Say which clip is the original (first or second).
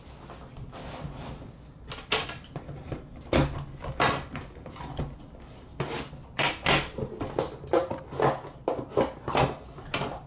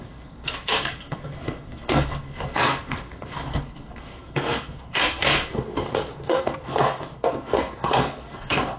first